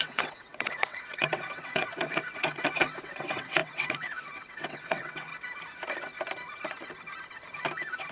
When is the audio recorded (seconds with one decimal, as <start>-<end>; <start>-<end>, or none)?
5.3-8.1

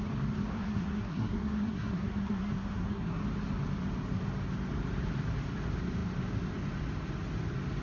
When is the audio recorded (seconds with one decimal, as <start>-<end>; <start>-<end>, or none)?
0.0-0.5; 3.2-7.8